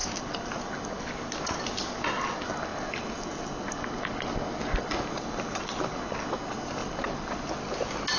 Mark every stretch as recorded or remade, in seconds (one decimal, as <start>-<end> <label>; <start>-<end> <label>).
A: 0.0-1.1 remade; 1.1-2.7 recorded; 2.7-5.4 remade; 5.4-6.8 recorded; 6.8-7.5 remade; 7.5-8.2 recorded